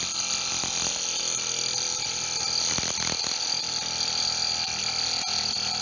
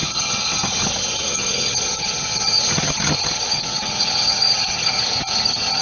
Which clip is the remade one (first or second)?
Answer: second